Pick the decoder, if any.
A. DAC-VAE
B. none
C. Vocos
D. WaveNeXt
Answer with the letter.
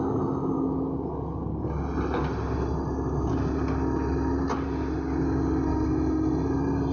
B